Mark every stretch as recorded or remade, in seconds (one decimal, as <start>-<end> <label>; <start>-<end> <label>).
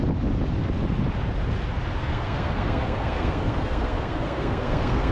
0.0-2.0 recorded; 2.0-5.1 remade